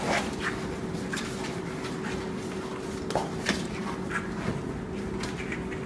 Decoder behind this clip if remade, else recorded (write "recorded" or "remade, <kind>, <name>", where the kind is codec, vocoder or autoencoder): recorded